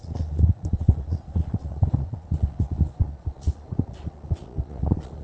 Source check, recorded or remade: remade